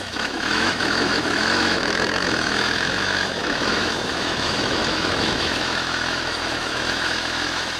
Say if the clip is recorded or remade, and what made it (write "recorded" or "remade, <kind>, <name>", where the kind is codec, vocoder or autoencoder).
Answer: remade, autoencoder, DAC-VAE